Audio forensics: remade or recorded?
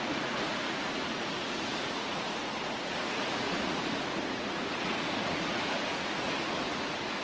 remade